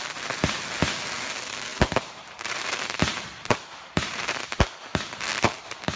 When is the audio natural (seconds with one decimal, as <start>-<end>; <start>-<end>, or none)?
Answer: 0.0-1.7; 4.4-6.0